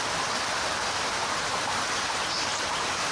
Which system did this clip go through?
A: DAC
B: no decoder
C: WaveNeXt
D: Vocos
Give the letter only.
B